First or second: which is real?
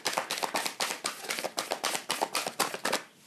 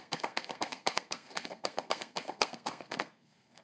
first